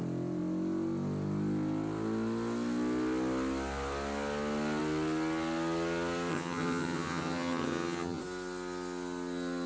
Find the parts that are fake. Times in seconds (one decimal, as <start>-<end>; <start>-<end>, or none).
6.3-8.2